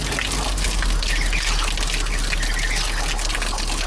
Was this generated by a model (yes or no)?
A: no